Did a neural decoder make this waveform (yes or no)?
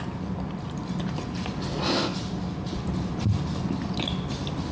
no